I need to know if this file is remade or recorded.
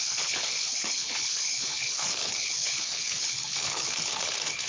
remade